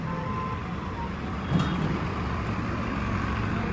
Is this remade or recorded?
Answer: recorded